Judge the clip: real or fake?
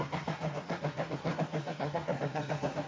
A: fake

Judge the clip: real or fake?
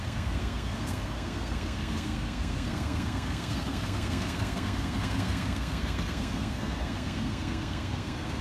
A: fake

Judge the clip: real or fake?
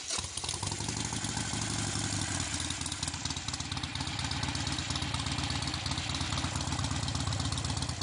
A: real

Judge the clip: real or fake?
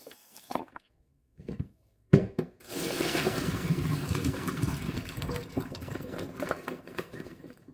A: fake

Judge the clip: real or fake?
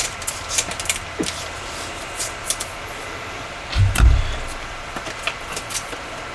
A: real